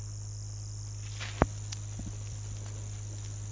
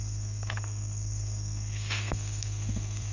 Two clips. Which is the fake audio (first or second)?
second